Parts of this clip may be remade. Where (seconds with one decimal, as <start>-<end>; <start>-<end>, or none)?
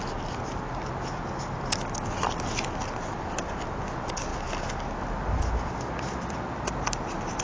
none